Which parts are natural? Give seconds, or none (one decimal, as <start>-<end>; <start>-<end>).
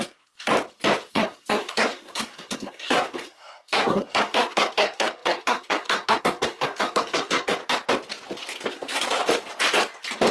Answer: 0.5-1.1; 7.6-8.7; 9.2-10.3